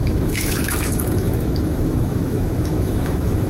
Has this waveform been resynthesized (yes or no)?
yes